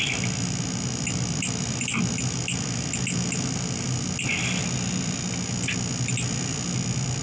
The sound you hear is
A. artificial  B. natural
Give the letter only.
B